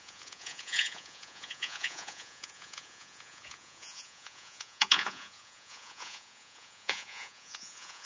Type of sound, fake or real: fake